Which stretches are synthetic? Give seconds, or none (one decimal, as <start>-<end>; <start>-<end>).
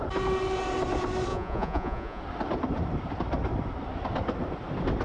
1.3-2.2